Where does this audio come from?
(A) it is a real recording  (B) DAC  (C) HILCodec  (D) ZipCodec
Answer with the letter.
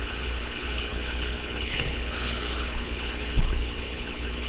C